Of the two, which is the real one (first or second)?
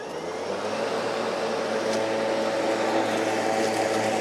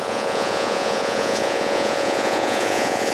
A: first